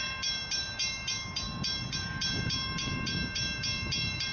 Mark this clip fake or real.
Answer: fake